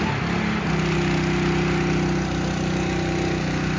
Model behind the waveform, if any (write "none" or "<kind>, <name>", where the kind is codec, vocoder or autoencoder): none